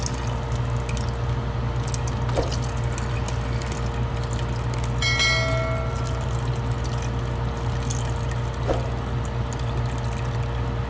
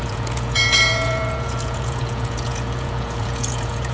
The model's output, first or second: second